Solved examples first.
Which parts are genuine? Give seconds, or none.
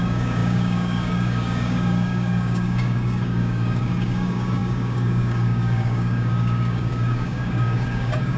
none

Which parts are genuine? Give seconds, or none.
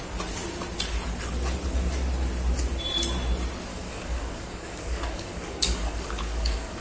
0.0-3.7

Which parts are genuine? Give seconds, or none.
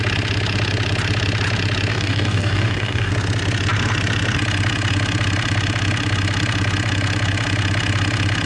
0.0-1.9; 3.1-8.4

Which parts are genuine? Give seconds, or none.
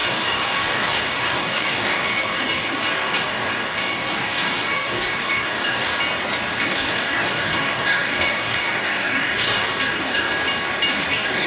5.9-6.6; 10.3-11.1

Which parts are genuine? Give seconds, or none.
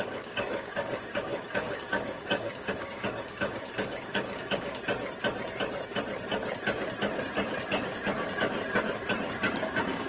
4.8-9.6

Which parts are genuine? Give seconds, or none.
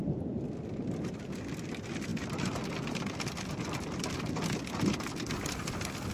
0.0-6.1